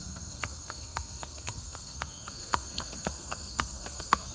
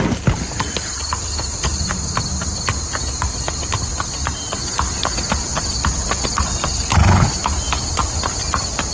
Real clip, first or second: second